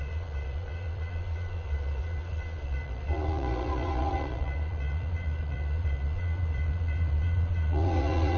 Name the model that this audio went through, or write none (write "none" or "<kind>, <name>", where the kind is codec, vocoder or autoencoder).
vocoder, Vocos